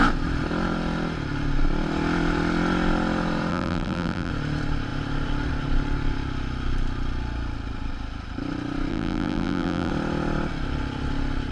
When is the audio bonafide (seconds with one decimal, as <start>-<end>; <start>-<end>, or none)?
0.0-3.5; 4.3-8.9; 9.9-11.5

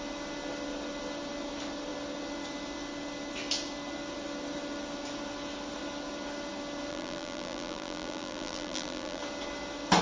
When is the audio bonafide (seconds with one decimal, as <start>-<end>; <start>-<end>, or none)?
0.0-6.9; 9.2-10.0

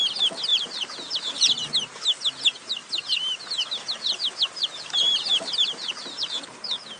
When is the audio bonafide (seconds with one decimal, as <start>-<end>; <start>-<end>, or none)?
0.0-0.5; 1.6-2.8; 6.6-7.0

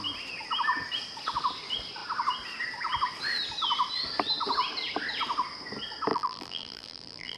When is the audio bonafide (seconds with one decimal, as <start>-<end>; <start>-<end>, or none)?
0.0-6.1

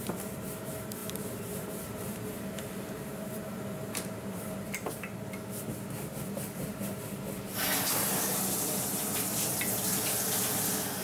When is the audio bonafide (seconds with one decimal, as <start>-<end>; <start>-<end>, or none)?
0.0-1.0; 4.9-11.0

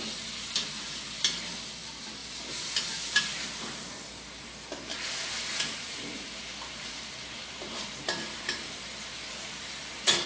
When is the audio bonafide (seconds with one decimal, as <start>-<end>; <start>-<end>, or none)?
0.0-4.9; 9.9-10.3

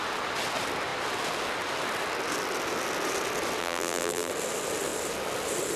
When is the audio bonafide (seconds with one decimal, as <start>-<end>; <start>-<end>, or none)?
0.0-3.6; 4.3-5.8